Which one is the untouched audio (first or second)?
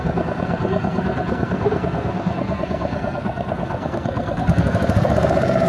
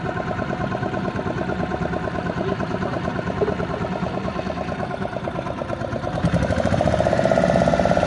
second